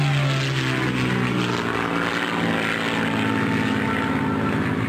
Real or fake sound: real